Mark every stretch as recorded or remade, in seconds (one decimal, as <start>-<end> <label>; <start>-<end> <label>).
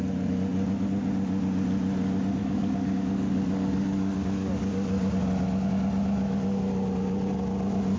0.0-2.4 recorded; 2.4-5.2 remade; 5.2-8.0 recorded